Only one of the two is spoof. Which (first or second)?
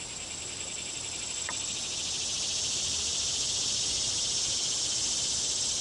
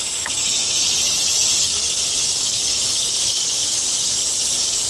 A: second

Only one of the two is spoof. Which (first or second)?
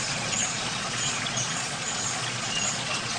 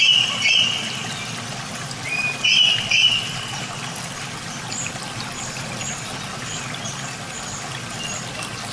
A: first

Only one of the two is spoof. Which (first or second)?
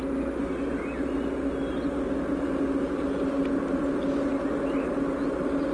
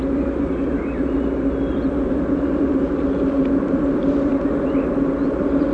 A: second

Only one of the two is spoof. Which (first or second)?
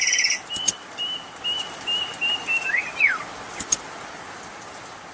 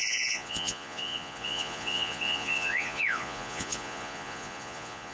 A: second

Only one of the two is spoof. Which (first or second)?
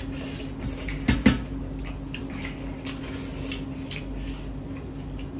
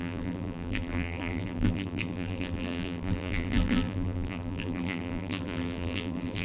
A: second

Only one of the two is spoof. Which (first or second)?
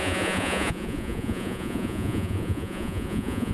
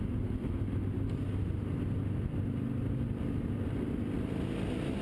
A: first